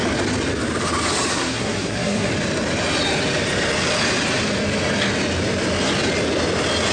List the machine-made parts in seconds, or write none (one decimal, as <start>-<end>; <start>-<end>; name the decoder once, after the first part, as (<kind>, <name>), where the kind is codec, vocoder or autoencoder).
1.3-2.3 (codec, SNAC)